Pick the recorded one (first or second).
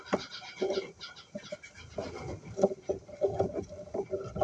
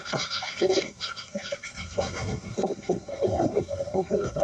first